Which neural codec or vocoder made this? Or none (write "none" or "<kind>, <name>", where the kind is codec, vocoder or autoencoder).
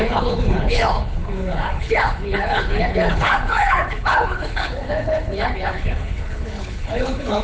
codec, HILCodec